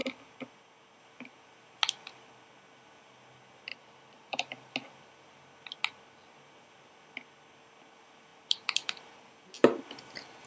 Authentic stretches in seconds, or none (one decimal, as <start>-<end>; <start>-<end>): 0.0-3.7; 4.7-8.3; 9.3-10.5